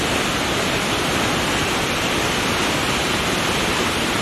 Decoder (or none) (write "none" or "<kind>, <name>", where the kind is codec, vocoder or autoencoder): none